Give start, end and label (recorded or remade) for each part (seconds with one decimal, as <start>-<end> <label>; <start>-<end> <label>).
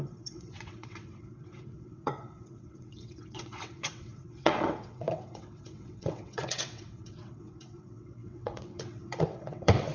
0.0-9.9 remade